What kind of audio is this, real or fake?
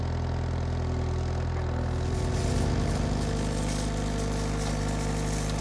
real